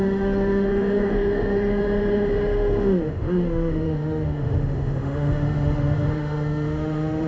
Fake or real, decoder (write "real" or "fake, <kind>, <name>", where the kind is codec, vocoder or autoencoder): fake, autoencoder, DAC-VAE